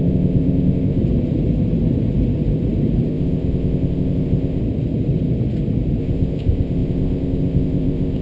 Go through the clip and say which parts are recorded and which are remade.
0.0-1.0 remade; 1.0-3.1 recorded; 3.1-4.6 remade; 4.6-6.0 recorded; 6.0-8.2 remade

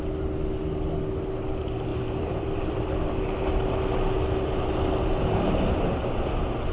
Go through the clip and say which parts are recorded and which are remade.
0.0-1.9 recorded; 1.9-3.0 remade; 3.0-6.7 recorded

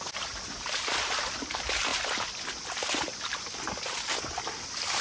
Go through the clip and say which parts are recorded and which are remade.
0.0-5.0 recorded